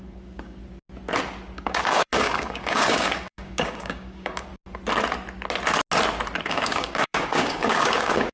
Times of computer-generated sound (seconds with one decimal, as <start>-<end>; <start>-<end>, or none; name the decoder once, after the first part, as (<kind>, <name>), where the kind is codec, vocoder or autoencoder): 0.0-0.6 (codec, DAC); 1.6-4.5; 6.5-8.3